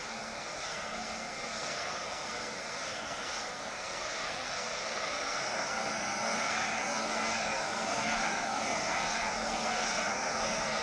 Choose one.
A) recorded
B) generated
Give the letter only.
B